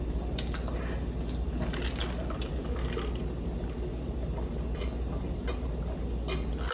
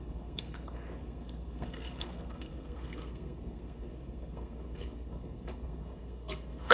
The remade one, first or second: second